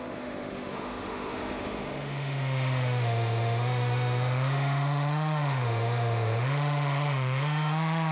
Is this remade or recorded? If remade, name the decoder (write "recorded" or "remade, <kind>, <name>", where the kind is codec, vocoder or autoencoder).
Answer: remade, autoencoder, DAC-VAE